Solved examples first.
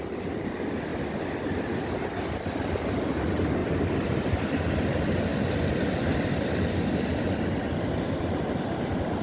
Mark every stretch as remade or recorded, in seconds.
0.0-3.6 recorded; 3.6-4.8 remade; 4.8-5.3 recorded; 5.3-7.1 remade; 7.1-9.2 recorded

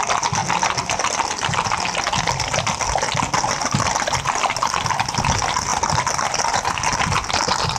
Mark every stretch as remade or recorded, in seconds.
0.0-0.4 recorded; 0.4-5.1 remade; 5.1-5.7 recorded; 5.7-6.5 remade; 6.5-7.8 recorded

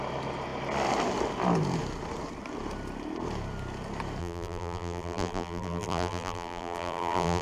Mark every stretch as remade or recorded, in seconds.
0.0-4.2 recorded; 4.2-7.4 remade

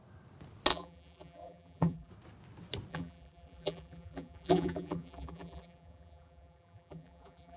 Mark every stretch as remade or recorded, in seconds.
0.0-0.7 recorded; 0.7-2.1 remade; 2.1-2.9 recorded; 2.9-7.6 remade

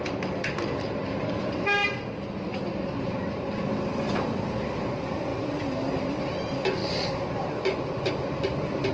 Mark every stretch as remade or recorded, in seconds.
0.0-8.9 recorded

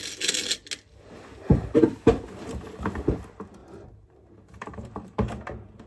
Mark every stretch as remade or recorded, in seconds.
0.0-3.6 recorded; 3.6-5.3 remade; 5.3-5.9 recorded

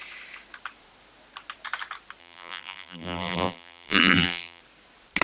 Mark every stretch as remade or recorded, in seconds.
0.0-2.2 recorded; 2.2-4.6 remade; 4.6-5.2 recorded